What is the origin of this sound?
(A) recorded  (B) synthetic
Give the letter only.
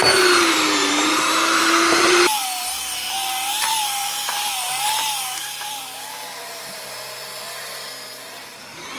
B